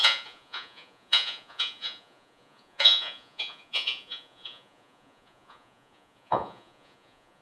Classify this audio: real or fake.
fake